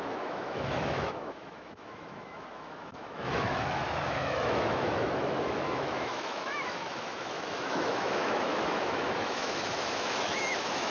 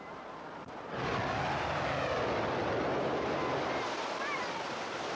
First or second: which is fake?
first